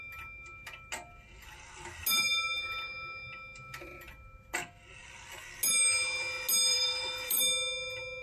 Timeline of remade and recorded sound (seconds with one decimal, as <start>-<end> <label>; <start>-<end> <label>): 0.0-6.7 recorded; 6.7-7.4 remade; 7.4-8.2 recorded